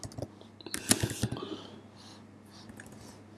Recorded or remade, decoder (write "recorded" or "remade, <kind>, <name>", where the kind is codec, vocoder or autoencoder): recorded